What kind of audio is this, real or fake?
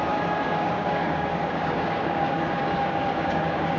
fake